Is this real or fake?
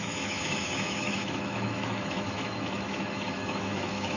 fake